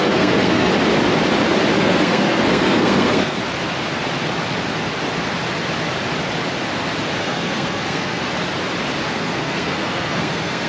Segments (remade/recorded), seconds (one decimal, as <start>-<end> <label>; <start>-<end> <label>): 0.0-0.7 remade; 0.7-1.8 recorded; 1.8-3.4 remade; 3.4-7.2 recorded; 7.2-8.2 remade; 8.2-9.1 recorded; 9.1-10.7 remade